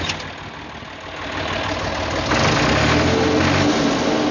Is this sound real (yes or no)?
yes